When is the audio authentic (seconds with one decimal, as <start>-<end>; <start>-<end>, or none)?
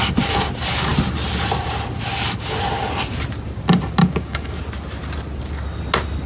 0.0-4.0; 4.6-6.3